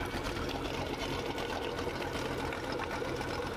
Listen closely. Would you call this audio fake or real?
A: real